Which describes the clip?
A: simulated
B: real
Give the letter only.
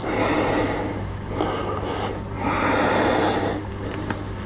B